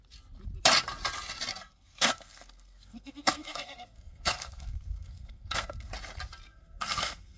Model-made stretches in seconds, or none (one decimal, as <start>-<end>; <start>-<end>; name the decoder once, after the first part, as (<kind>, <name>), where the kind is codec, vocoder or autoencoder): 1.5-5.9 (codec, SNAC); 6.5-7.4